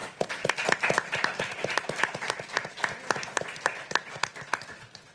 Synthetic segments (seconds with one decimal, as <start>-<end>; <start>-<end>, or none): none